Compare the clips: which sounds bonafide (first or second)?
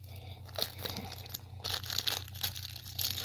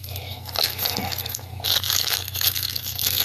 first